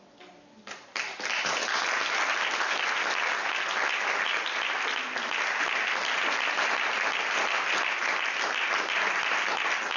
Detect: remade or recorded recorded